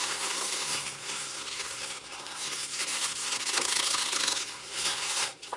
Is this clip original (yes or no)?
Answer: no